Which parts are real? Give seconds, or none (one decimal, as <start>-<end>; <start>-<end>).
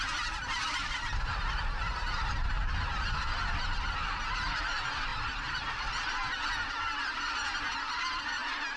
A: 0.0-8.8